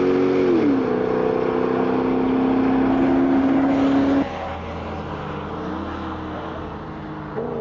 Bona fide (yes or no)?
yes